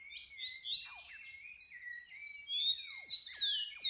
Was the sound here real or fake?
real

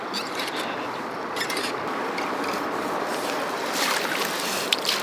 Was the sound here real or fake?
real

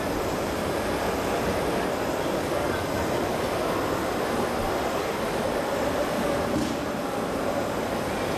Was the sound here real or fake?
real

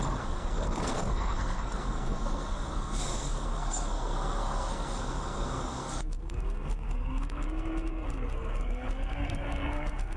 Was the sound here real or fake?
fake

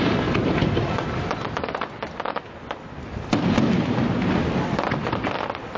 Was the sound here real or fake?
real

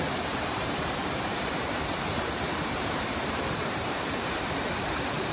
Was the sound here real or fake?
fake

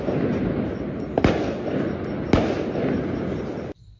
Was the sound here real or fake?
real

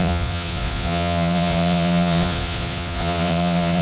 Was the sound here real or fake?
fake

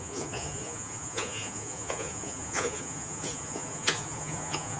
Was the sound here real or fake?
fake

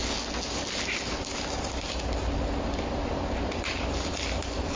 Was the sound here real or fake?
real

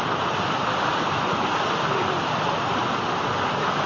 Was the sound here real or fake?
real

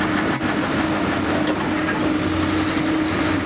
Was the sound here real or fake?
real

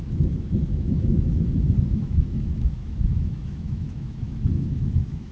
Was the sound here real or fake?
fake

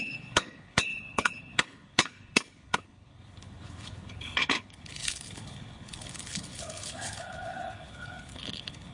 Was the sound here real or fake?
fake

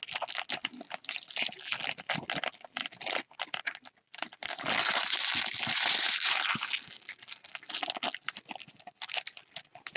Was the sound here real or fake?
real